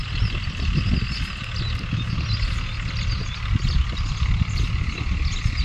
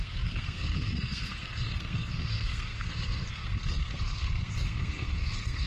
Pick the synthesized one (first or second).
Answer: second